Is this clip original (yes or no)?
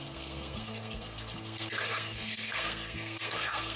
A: no